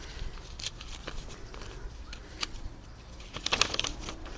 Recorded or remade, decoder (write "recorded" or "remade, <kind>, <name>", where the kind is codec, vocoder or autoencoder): remade, vocoder, BigVGAN v2